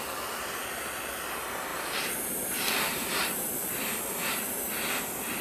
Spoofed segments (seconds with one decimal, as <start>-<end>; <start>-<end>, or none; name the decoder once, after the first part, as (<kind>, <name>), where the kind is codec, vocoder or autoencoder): 1.7-4.6 (vocoder, BigVGAN v2)